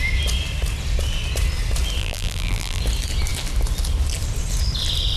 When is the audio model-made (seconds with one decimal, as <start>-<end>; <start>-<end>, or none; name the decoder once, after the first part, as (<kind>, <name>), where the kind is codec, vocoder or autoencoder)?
2.0-2.8 (vocoder, BigVGAN v2)